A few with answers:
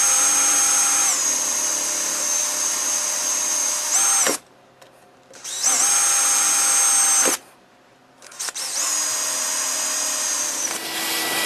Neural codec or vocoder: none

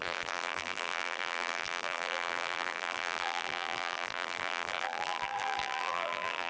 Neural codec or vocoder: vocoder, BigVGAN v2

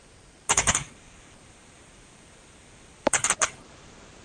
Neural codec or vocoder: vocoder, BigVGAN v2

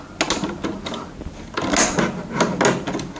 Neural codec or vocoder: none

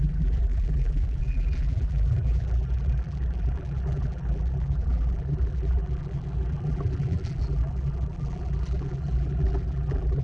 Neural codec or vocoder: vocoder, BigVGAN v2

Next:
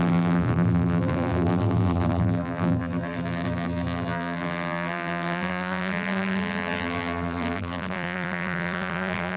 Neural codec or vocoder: vocoder, BigVGAN v2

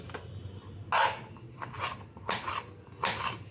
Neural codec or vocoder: none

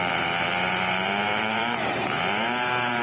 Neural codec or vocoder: vocoder, BigVGAN v2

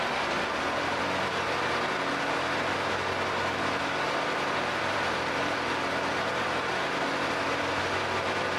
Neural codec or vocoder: vocoder, BigVGAN v2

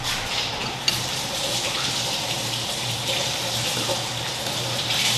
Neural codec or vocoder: vocoder, BigVGAN v2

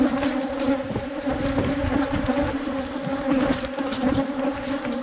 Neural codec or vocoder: vocoder, BigVGAN v2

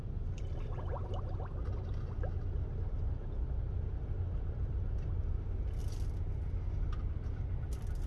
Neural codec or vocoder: none